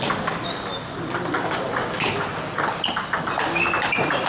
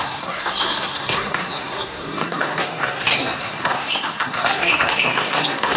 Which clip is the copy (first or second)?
second